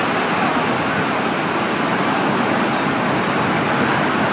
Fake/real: real